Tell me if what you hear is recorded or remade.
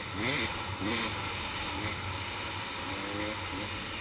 recorded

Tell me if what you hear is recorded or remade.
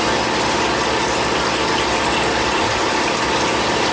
recorded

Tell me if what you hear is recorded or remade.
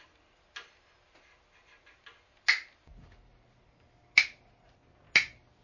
recorded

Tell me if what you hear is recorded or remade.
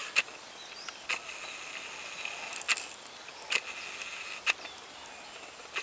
recorded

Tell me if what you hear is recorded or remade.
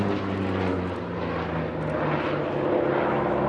recorded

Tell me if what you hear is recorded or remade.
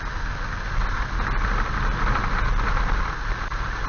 recorded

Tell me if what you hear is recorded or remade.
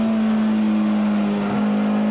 recorded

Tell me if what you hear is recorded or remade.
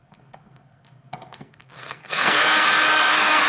remade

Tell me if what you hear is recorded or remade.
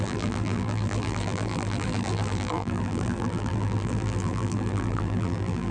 remade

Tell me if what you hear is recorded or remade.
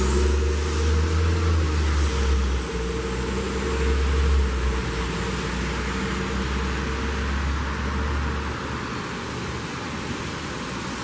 recorded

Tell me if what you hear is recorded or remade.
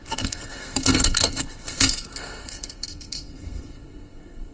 remade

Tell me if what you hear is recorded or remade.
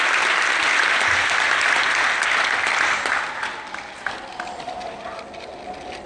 recorded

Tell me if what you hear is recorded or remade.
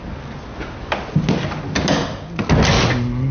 recorded